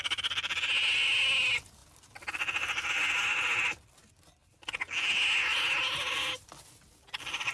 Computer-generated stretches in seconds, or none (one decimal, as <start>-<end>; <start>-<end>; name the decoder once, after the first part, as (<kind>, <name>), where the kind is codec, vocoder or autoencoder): none